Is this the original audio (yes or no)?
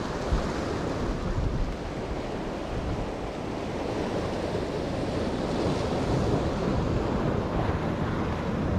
yes